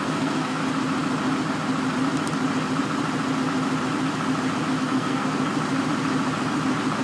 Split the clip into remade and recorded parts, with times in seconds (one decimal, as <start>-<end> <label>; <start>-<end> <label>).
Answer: 0.0-0.6 remade; 0.6-4.8 recorded; 4.8-5.5 remade; 5.5-7.0 recorded